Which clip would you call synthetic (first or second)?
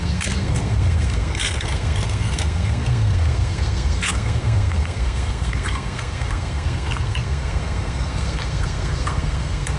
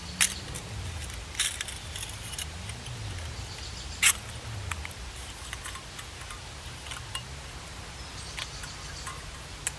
first